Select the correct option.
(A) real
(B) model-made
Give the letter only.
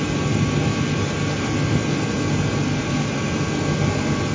A